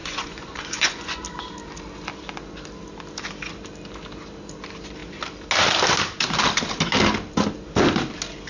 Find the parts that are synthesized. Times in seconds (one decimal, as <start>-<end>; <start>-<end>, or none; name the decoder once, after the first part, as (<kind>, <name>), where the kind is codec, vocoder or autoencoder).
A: 0.0-1.2 (vocoder, Vocos)

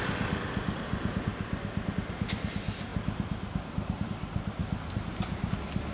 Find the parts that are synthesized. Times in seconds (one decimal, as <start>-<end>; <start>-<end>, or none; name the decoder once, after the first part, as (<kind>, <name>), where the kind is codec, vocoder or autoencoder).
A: none

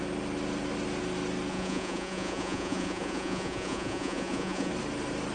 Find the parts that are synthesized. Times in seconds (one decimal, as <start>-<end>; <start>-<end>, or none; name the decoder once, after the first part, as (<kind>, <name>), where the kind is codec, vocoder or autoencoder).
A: 1.5-4.7 (vocoder, Vocos)

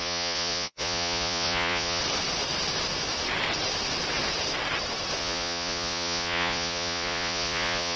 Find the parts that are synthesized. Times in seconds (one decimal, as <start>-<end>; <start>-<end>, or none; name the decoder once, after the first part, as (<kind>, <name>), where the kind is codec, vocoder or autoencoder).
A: 0.0-2.0 (vocoder, Vocos); 5.2-8.0